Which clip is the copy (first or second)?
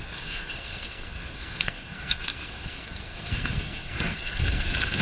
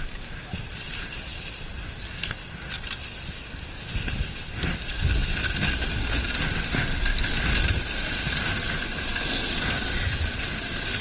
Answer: first